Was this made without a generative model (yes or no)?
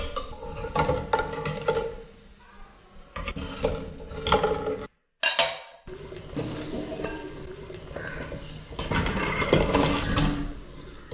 yes